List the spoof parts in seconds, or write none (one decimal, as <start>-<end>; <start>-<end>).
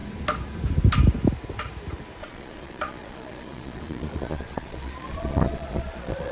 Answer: 2.2-6.3